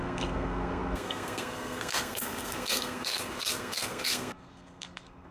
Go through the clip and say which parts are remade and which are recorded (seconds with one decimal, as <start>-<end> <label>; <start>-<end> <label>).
0.0-5.3 remade